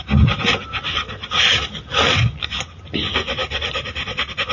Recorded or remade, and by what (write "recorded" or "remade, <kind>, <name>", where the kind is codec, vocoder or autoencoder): recorded